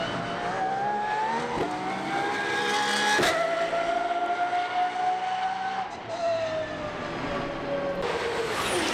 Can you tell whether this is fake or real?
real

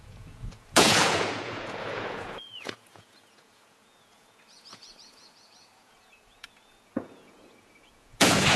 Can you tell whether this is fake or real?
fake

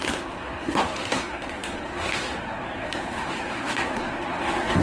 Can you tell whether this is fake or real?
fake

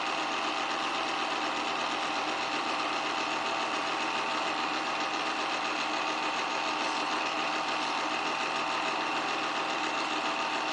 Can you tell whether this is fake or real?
real